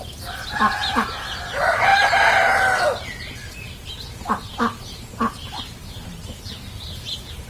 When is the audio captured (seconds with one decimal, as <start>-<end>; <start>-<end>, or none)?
0.0-7.5